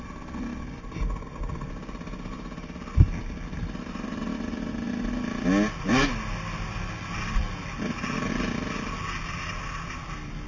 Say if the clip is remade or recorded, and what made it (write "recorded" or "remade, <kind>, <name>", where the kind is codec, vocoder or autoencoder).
recorded